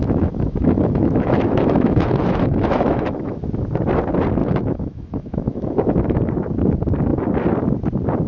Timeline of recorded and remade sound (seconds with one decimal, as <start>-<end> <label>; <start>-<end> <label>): 0.0-3.4 remade; 3.4-4.4 recorded; 4.4-6.3 remade; 6.3-8.3 recorded